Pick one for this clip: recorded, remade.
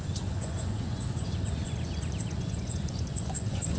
remade